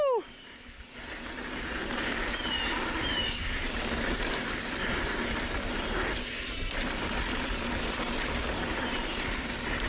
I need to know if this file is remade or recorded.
recorded